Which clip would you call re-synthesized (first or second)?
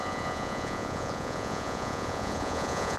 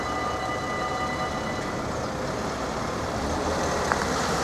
first